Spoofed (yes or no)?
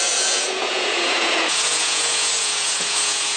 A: yes